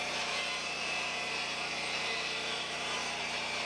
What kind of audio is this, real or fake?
fake